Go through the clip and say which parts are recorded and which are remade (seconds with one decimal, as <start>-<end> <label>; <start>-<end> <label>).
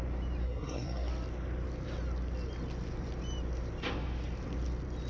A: 0.0-0.4 recorded; 0.4-1.1 remade; 1.1-5.1 recorded